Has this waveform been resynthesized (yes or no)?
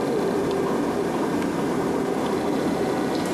yes